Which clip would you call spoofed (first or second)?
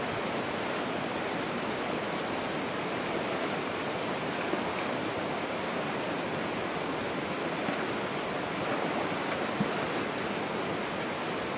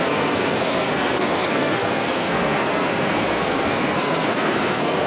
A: second